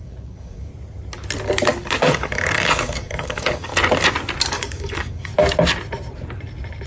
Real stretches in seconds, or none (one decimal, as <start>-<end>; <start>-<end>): 0.7-2.1; 3.7-4.5; 5.3-6.9